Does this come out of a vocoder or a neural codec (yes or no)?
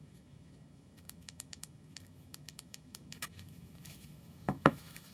yes